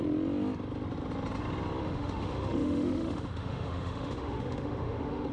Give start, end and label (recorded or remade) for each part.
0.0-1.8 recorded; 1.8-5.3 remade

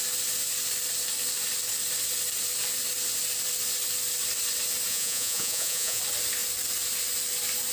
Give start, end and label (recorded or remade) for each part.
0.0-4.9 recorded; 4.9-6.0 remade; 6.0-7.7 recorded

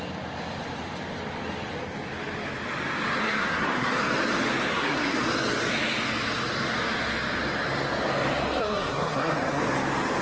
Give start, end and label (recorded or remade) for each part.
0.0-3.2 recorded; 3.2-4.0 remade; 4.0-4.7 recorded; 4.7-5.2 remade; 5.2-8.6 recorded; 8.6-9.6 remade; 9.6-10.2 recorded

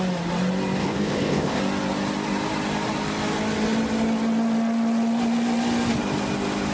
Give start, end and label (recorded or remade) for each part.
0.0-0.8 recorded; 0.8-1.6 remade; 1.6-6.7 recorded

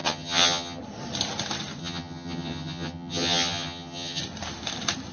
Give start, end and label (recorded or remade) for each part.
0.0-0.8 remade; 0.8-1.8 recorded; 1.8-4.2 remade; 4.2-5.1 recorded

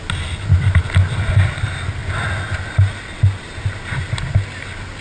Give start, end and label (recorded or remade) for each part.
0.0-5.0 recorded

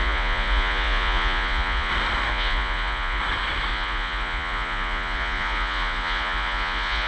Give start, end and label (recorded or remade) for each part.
0.0-1.9 remade; 1.9-2.3 recorded; 2.3-3.2 remade; 3.2-3.7 recorded; 3.7-7.1 remade